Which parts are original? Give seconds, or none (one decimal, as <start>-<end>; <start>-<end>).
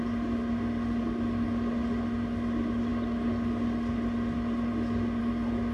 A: 0.0-5.7